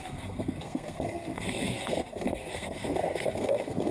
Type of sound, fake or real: fake